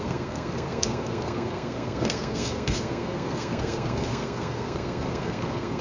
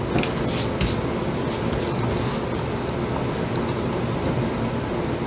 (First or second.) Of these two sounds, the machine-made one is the first